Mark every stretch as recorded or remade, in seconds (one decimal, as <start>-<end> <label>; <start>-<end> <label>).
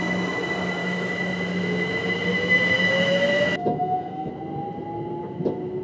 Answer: 0.0-0.8 recorded; 0.8-4.3 remade; 4.3-5.8 recorded